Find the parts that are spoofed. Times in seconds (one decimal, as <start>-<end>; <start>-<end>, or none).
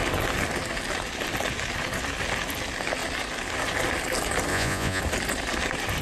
4.5-5.0